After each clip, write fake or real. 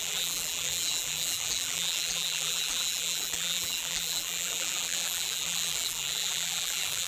fake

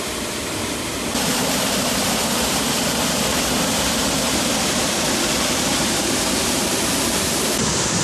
fake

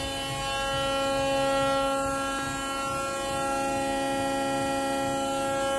real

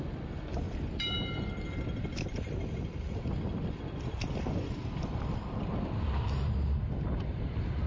real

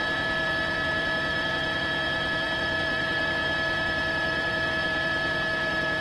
fake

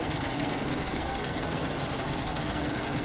fake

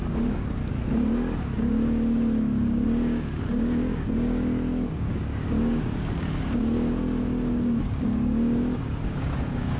fake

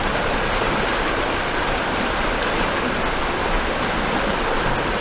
real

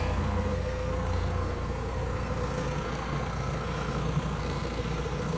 fake